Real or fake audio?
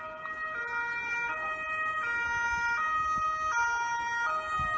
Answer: real